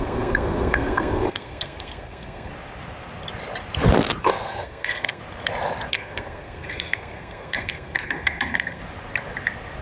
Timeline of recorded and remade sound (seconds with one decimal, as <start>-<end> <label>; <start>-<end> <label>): 0.0-2.5 remade; 2.5-4.2 recorded; 4.2-5.2 remade; 5.2-5.9 recorded; 5.9-8.8 remade; 8.8-9.8 recorded